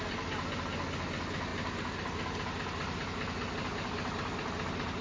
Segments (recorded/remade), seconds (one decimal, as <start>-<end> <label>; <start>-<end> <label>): 0.0-5.0 recorded